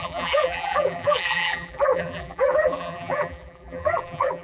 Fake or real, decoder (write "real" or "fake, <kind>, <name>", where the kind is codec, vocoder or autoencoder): fake, vocoder, BigVGAN v2